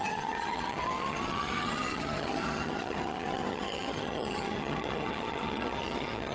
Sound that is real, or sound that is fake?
fake